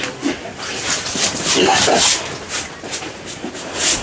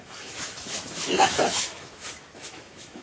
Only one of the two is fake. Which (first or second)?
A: second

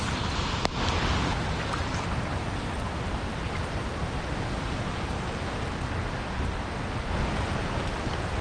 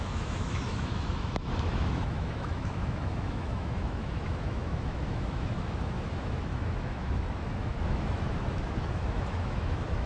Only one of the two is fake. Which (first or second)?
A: second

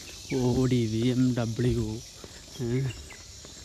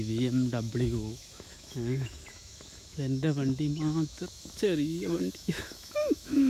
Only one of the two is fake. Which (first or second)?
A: second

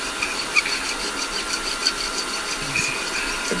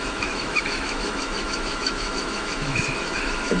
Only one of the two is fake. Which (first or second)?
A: second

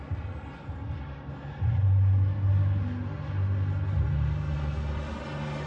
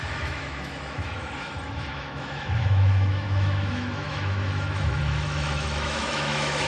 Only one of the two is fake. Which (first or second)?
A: second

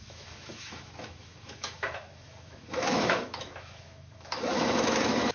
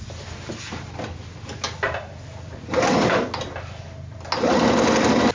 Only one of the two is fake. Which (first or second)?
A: first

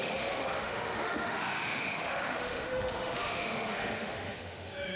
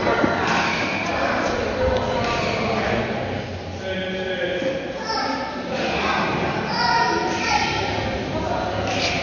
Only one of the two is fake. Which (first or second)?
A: first